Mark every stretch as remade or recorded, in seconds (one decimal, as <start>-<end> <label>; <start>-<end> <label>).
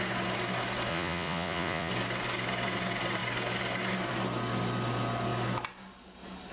0.0-0.9 recorded; 0.9-1.9 remade; 1.9-6.5 recorded